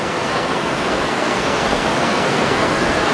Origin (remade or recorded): remade